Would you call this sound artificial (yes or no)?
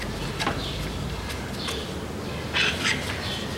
no